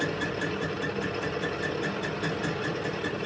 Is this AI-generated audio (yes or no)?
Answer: no